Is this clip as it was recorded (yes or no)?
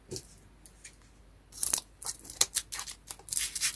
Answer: yes